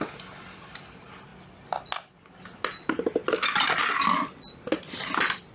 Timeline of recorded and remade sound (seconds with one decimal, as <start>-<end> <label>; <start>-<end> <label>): 0.0-5.5 recorded